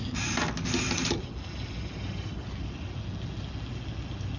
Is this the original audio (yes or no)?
yes